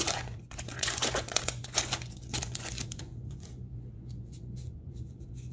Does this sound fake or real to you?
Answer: fake